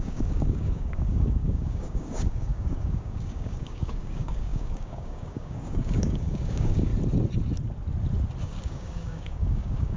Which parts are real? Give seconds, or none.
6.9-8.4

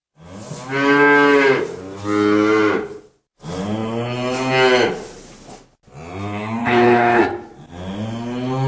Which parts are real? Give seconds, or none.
0.0-6.6; 7.2-8.7

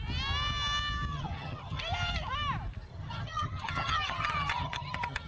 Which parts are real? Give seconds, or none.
0.0-1.1; 1.8-2.9

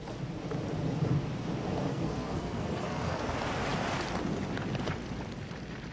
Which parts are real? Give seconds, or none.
0.0-1.9; 3.3-5.9

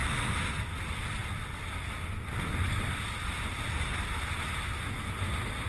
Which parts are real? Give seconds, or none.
0.0-5.7

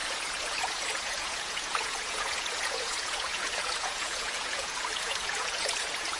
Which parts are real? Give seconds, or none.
none

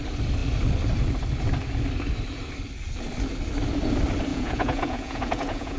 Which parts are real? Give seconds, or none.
0.0-4.3

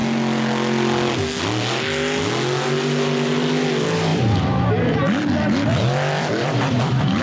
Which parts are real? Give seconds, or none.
0.0-4.1; 4.7-5.7